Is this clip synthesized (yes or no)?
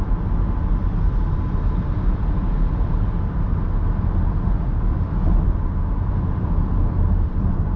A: no